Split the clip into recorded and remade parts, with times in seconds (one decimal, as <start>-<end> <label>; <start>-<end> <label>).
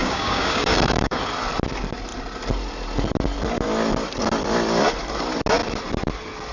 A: 0.0-1.2 remade; 1.2-6.5 recorded